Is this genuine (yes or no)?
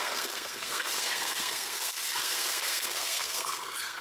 no